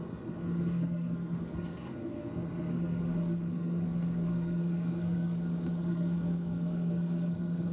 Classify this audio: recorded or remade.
remade